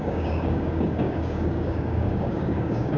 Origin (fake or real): fake